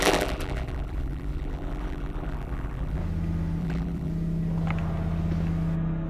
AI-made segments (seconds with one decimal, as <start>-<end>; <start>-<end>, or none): 0.0-3.0; 3.6-4.1